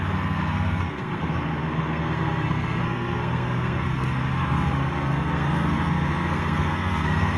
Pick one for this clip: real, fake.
fake